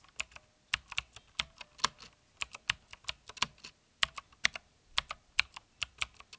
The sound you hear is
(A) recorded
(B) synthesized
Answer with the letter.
A